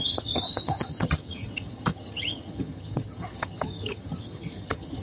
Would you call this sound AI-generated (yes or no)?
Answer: yes